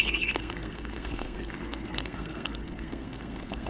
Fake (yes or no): yes